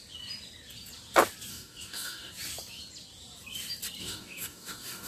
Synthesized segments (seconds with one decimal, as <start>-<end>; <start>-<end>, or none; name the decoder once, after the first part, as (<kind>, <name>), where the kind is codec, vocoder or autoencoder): 1.5-2.3 (codec, DAC); 4.0-5.1